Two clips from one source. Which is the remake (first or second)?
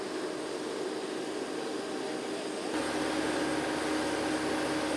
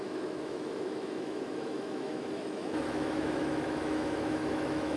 second